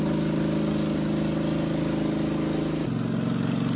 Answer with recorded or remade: recorded